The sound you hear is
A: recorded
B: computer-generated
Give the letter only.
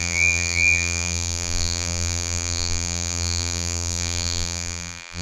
B